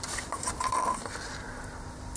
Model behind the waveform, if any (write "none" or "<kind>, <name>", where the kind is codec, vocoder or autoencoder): none